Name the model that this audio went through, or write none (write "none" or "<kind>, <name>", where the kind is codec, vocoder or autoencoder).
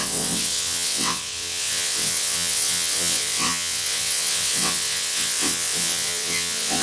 vocoder, WaveNeXt